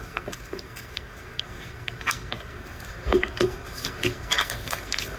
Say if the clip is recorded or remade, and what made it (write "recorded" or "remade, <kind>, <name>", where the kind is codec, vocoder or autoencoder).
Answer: remade, codec, SNAC